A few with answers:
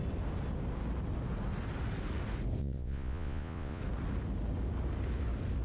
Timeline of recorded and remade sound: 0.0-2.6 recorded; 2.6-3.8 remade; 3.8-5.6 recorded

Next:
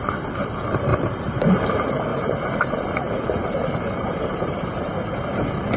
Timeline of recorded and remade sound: 0.0-0.9 recorded; 0.9-1.7 remade; 1.7-2.1 recorded; 2.1-5.8 remade